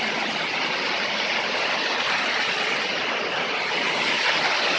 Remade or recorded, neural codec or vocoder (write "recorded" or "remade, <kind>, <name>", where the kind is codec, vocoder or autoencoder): recorded